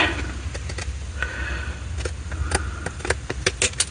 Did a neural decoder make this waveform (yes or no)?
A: no